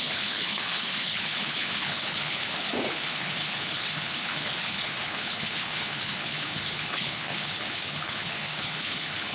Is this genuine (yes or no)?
no